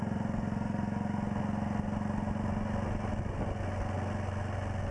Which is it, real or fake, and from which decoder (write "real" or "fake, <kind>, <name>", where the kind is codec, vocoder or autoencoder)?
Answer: real